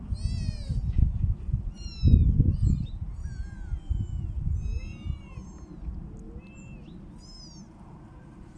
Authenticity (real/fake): real